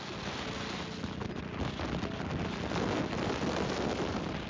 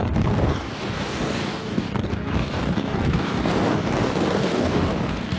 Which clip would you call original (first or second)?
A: first